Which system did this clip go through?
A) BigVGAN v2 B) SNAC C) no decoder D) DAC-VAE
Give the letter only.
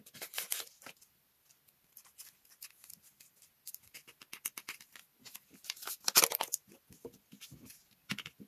C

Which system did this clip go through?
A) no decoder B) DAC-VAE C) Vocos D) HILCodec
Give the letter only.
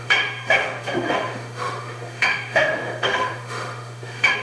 B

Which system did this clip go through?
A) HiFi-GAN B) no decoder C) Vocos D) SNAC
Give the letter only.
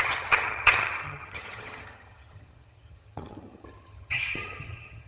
A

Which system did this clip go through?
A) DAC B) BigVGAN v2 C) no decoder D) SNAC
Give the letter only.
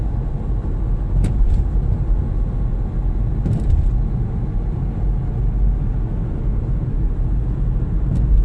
C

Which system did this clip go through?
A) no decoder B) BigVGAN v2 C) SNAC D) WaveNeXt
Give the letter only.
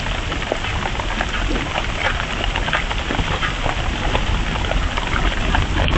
A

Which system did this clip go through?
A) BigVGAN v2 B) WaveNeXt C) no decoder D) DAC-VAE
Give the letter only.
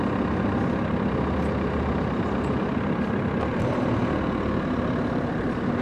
A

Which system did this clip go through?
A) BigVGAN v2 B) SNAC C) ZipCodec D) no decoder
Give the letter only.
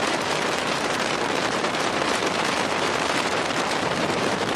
A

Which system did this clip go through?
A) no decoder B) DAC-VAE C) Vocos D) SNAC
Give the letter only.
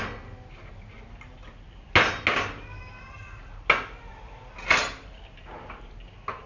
A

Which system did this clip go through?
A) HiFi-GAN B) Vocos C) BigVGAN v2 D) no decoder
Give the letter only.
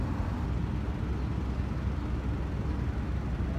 D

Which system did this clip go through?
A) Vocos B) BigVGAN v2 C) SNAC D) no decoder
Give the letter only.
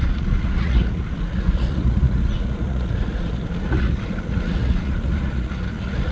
A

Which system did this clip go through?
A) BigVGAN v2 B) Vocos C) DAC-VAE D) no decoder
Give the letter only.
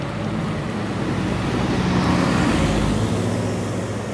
D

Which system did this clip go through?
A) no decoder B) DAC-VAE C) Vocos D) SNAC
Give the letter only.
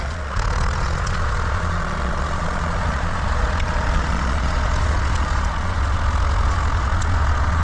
C